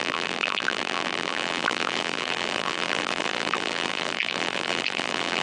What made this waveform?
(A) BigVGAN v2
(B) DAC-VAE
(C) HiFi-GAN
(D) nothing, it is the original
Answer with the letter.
A